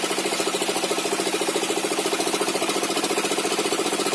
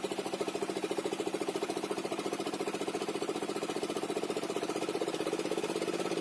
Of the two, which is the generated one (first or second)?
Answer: second